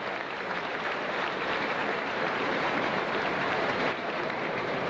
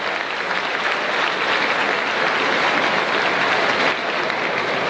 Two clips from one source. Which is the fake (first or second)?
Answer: first